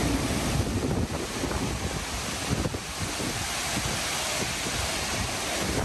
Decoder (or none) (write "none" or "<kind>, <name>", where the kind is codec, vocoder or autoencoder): none